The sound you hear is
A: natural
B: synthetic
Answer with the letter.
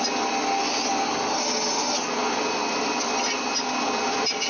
A